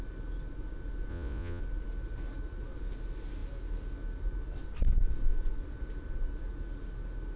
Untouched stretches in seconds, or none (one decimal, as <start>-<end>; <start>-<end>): 0.0-1.1; 1.6-7.4